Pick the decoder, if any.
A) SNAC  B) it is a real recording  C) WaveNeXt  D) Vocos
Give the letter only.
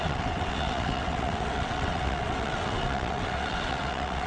C